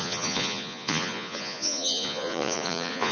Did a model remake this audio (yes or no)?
yes